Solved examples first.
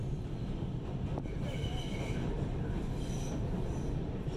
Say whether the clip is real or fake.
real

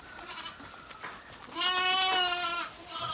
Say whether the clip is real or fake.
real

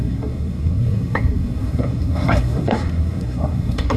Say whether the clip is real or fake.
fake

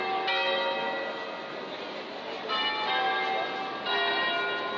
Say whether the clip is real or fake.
real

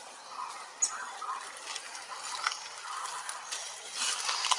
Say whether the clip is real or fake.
real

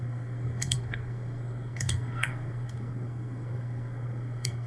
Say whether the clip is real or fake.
fake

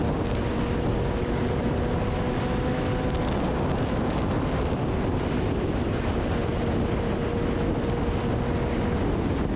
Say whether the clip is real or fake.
real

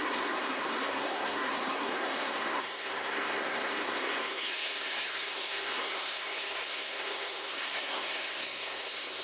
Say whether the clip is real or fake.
fake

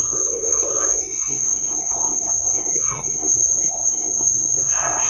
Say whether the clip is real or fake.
fake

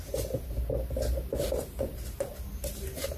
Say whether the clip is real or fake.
real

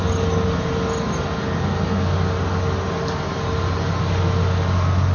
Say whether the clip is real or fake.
real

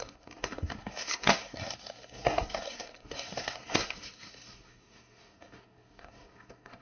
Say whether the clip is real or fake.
fake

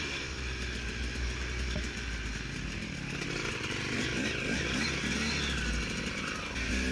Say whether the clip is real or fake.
real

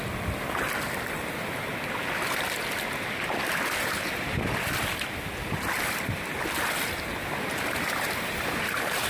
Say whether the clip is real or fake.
real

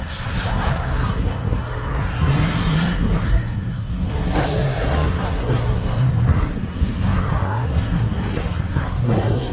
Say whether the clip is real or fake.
fake